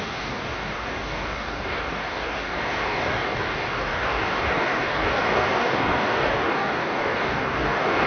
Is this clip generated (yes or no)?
yes